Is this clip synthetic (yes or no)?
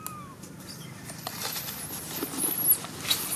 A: no